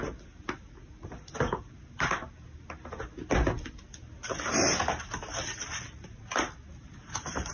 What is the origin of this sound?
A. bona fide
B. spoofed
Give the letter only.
A